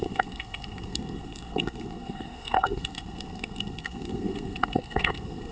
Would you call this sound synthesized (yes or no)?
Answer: yes